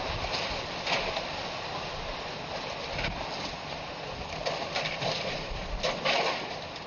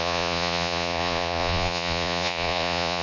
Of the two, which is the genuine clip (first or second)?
first